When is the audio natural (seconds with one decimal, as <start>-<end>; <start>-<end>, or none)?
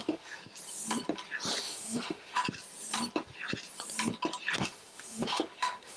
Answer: 0.4-1.6; 2.4-4.6